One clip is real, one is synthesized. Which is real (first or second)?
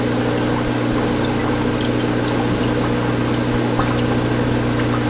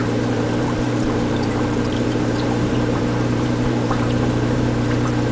first